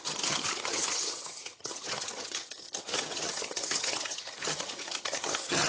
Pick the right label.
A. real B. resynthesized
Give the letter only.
B